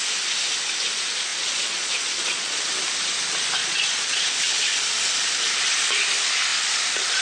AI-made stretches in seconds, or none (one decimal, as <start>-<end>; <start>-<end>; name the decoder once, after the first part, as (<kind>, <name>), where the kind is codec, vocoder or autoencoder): 1.3-2.6 (vocoder, Vocos); 3.6-4.2